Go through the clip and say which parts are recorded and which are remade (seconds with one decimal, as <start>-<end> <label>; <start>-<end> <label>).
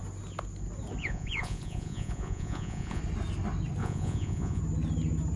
0.0-1.0 recorded; 1.0-3.0 remade; 3.0-3.8 recorded; 3.8-4.6 remade; 4.6-5.4 recorded